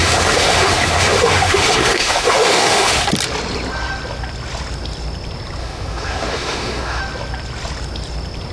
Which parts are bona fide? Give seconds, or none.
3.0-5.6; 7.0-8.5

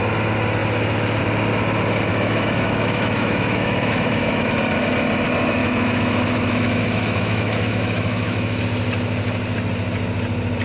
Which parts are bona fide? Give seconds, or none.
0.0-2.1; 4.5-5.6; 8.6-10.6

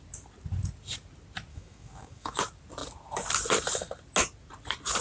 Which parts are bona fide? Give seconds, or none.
0.0-1.5; 2.4-5.0

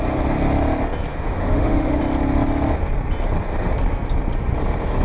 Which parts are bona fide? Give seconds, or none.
0.0-1.1; 2.0-5.0

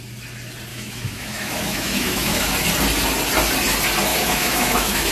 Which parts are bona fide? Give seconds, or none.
0.0-0.7; 2.5-4.1

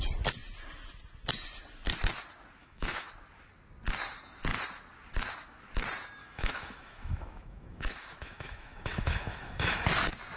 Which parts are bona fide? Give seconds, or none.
0.0-2.6; 3.1-6.2; 9.8-10.4